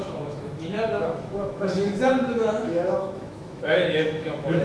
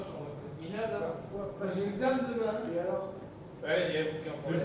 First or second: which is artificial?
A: first